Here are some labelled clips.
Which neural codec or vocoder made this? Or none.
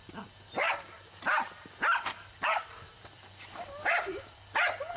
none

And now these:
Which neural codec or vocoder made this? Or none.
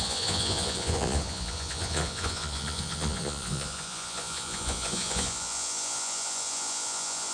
vocoder, Vocos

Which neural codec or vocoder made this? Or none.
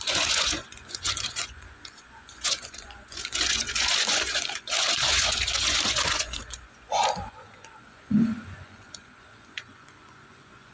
vocoder, Vocos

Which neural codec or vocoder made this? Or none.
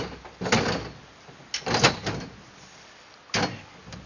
none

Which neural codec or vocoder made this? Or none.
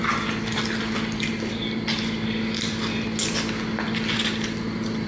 none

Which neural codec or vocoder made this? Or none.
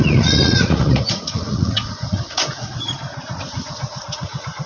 vocoder, Vocos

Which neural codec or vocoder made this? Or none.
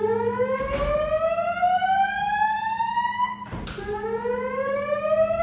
none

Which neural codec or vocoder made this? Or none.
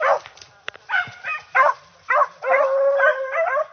none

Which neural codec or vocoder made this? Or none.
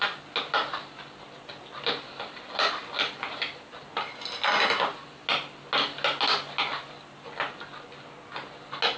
none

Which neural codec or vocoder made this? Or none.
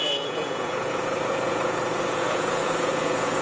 vocoder, Vocos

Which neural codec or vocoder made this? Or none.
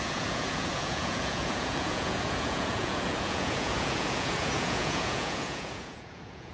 vocoder, Vocos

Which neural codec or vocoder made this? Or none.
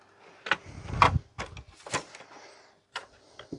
none